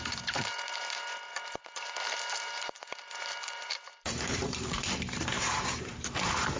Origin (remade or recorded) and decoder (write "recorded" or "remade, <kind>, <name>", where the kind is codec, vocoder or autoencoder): remade, vocoder, BigVGAN v2